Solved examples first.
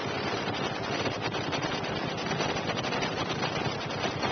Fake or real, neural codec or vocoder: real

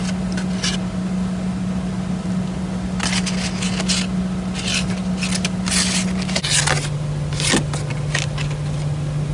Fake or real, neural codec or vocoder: real